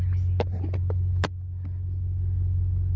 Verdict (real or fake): real